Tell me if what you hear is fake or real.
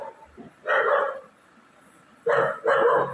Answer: real